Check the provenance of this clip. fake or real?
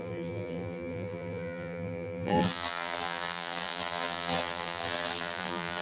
fake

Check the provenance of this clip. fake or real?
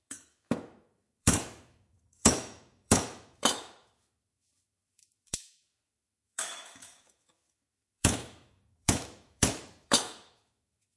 fake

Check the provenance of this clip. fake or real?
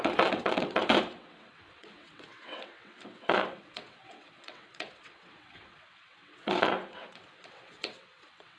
fake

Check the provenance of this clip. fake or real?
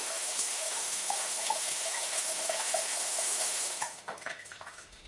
fake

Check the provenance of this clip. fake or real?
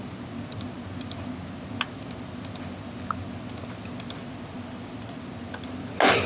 real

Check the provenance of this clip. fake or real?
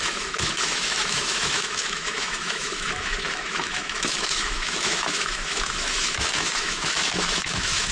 fake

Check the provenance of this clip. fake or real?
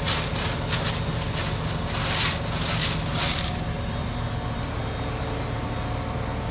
real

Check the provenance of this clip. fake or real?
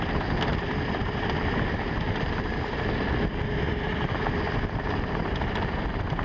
real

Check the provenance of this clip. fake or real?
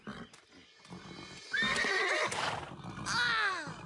real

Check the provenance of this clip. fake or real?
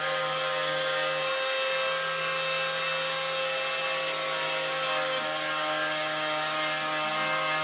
real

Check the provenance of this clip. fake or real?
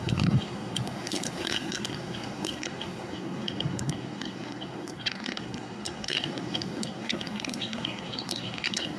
fake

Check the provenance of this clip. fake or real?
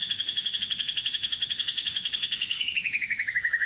fake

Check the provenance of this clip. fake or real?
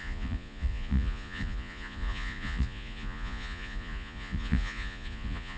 fake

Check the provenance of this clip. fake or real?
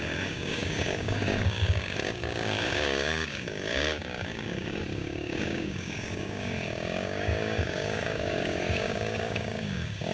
fake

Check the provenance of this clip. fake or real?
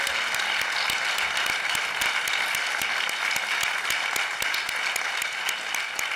real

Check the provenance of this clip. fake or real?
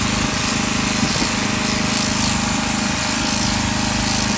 real